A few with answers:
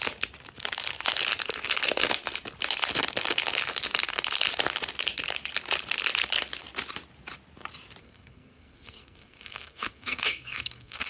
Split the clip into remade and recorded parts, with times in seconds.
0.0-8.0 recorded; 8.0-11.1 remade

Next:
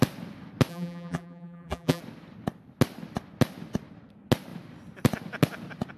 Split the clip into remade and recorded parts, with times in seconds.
0.0-0.7 recorded; 0.7-2.0 remade; 2.0-6.0 recorded

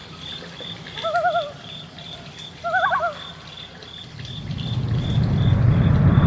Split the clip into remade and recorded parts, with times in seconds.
0.0-6.3 recorded

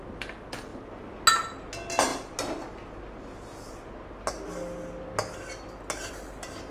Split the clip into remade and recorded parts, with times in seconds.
0.0-6.7 recorded

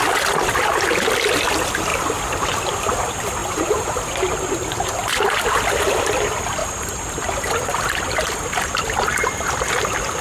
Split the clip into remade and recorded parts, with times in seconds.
0.0-1.9 recorded; 1.9-2.7 remade; 2.7-3.4 recorded; 3.4-4.6 remade; 4.6-10.2 recorded

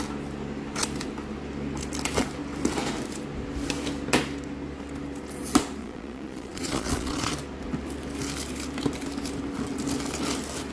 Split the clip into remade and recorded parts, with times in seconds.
0.0-5.8 recorded; 5.8-7.3 remade; 7.3-10.7 recorded

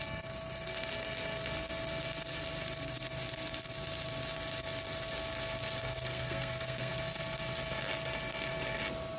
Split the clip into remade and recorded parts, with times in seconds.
0.0-5.8 recorded; 5.8-6.9 remade; 6.9-9.2 recorded

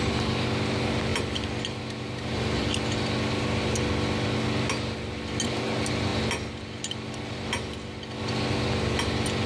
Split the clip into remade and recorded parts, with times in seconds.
0.0-1.1 recorded; 1.1-2.7 remade; 2.7-9.5 recorded